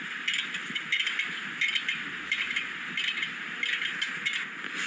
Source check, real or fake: real